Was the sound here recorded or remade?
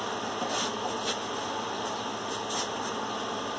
recorded